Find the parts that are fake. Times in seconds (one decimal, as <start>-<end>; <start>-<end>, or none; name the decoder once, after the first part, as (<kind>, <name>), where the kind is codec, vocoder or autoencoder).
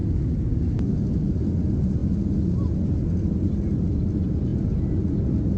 none